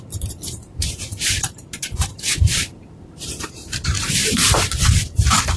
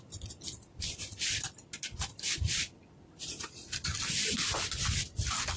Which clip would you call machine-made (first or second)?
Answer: first